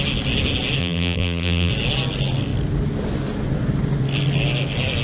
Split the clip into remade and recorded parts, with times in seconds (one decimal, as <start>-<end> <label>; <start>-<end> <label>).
0.0-0.8 recorded; 0.8-1.7 remade; 1.7-5.0 recorded

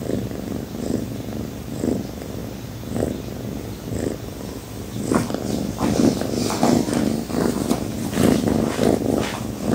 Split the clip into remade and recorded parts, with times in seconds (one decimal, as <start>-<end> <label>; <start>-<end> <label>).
0.0-9.7 recorded

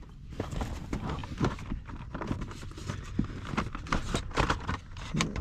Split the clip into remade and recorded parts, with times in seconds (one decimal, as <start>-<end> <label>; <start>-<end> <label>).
0.0-5.4 remade

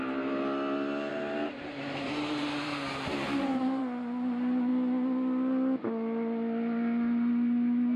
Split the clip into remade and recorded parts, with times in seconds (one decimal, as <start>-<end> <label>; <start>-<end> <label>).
0.0-1.1 recorded; 1.1-3.8 remade; 3.8-8.0 recorded

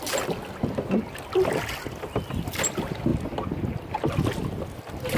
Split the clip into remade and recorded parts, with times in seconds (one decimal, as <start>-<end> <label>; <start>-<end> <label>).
0.0-5.2 recorded

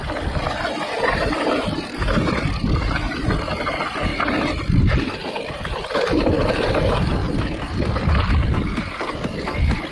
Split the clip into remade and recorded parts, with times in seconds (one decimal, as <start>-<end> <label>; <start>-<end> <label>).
0.0-4.1 recorded; 4.1-4.6 remade; 4.6-9.9 recorded